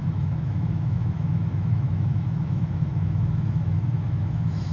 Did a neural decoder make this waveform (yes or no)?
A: yes